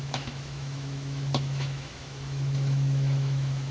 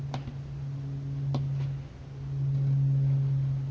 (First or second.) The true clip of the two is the second